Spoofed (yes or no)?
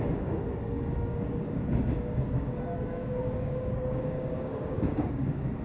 yes